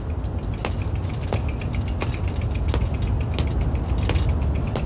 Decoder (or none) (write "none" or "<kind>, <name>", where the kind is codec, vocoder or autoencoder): none